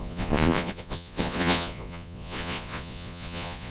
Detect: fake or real fake